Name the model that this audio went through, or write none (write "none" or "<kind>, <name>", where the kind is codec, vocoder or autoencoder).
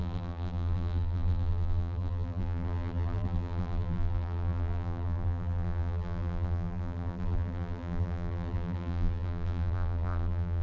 vocoder, BigVGAN v2